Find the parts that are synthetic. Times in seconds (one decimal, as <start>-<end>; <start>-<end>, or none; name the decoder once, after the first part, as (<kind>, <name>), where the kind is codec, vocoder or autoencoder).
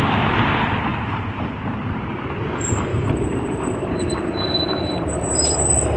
0.9-2.1 (vocoder, BigVGAN v2); 2.9-4.2